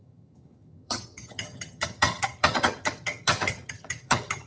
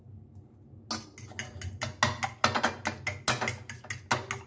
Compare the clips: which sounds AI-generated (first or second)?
first